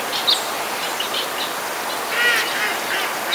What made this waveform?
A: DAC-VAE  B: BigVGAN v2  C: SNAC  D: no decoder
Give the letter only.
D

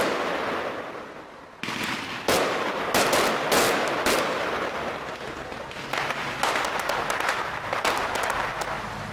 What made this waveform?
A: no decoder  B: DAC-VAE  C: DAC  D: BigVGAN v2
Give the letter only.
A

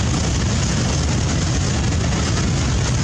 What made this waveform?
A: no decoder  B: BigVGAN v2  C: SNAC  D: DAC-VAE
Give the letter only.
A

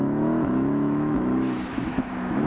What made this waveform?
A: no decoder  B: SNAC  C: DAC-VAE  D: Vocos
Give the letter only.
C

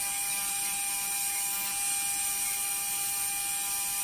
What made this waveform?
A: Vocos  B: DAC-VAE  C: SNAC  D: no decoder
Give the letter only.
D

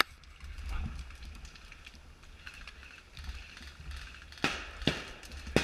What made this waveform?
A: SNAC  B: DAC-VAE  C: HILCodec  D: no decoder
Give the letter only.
D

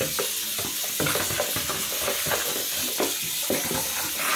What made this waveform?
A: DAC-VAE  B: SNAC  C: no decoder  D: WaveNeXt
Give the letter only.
C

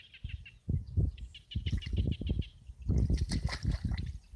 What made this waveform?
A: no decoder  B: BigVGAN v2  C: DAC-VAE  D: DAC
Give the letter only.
A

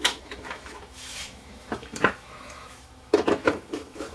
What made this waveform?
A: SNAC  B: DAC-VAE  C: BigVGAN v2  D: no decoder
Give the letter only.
B